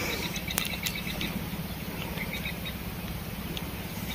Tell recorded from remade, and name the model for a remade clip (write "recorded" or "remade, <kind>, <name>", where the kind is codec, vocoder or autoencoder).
recorded